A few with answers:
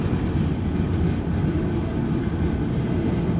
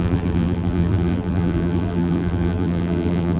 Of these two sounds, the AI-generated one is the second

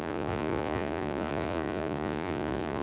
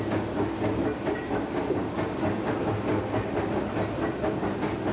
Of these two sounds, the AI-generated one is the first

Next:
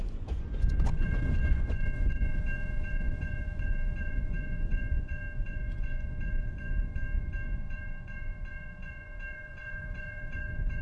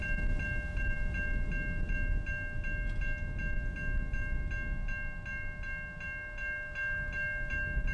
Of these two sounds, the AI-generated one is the first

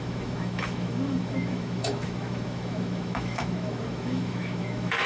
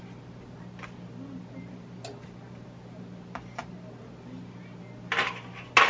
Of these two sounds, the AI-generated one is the first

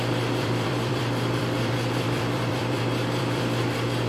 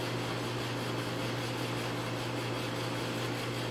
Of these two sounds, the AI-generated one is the first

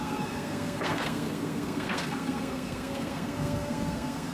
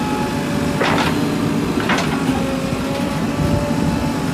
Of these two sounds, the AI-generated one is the first